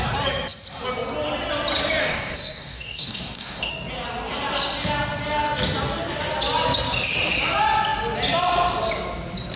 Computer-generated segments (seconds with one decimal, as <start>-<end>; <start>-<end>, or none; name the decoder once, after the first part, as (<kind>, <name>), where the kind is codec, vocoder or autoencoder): 2.0-3.7 (codec, DAC)